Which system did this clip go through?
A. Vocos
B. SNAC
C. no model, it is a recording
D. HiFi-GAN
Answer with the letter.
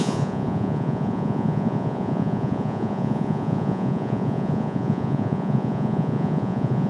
A